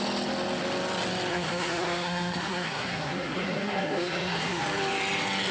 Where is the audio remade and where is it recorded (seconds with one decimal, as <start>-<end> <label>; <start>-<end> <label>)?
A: 0.0-1.3 recorded; 1.3-4.6 remade; 4.6-5.5 recorded

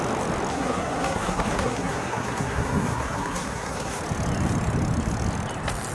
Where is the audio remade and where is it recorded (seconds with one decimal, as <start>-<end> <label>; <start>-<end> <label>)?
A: 0.0-0.5 recorded; 0.5-4.0 remade; 4.0-5.9 recorded